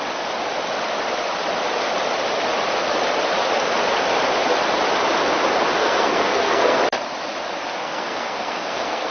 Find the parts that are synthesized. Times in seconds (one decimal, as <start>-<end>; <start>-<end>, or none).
5.8-6.8; 7.8-9.1